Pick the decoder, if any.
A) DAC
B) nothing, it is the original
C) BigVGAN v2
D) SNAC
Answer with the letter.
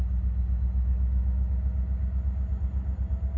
B